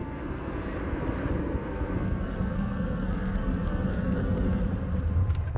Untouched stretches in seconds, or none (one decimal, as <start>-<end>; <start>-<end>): 0.6-1.4; 4.6-5.6

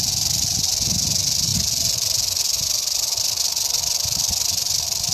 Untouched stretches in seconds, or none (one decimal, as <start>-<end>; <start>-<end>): 0.0-5.1

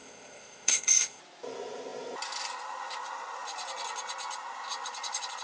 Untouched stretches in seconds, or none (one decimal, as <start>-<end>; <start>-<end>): 1.2-5.4

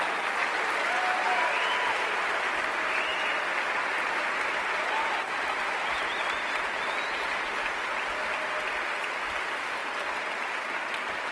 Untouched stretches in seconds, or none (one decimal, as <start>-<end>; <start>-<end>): 0.0-11.3